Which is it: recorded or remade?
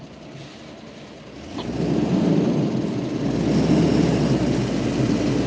recorded